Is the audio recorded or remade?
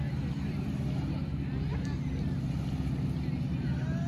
recorded